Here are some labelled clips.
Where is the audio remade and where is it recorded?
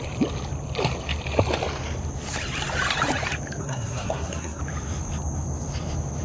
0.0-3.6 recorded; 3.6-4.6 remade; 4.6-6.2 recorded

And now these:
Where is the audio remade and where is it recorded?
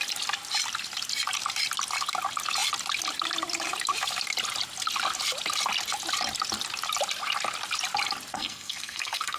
0.0-8.3 recorded; 8.3-9.4 remade